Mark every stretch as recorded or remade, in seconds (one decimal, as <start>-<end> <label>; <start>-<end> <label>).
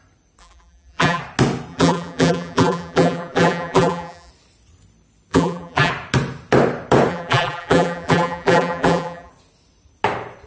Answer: 0.0-0.4 recorded; 0.4-1.2 remade; 1.2-1.7 recorded; 1.7-4.3 remade; 4.3-5.3 recorded; 5.3-5.9 remade; 5.9-7.1 recorded; 7.1-9.3 remade; 9.3-10.5 recorded